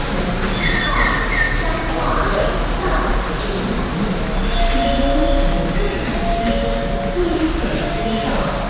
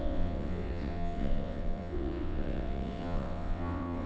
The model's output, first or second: second